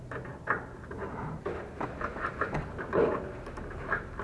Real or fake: real